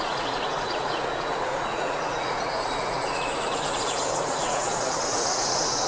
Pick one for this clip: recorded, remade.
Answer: remade